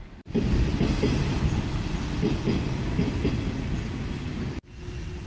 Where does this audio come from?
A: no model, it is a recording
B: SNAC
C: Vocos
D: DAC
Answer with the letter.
A